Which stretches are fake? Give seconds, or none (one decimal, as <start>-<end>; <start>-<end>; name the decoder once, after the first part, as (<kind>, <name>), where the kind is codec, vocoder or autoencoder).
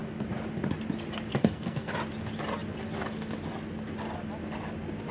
1.3-1.9 (codec, SNAC)